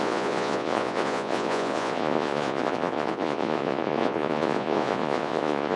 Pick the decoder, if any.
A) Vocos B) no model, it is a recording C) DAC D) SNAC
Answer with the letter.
A